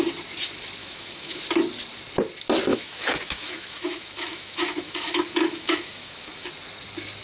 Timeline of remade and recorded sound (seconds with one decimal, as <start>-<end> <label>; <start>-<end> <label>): 0.0-0.8 recorded; 0.8-1.4 remade; 1.4-2.7 recorded; 2.7-6.5 remade; 6.5-7.2 recorded